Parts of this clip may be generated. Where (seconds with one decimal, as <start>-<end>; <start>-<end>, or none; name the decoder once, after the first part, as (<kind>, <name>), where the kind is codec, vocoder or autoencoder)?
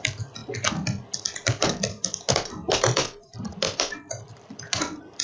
0.0-5.2 (vocoder, BigVGAN v2)